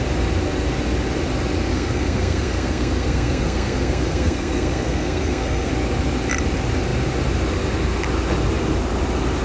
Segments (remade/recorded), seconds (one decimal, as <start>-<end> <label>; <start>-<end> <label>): 0.0-1.7 recorded; 1.7-5.7 remade; 5.7-9.4 recorded